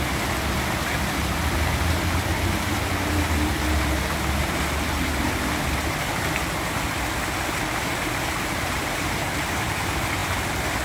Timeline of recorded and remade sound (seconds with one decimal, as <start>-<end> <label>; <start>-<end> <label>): 0.0-7.9 recorded; 7.9-9.7 remade; 9.7-10.8 recorded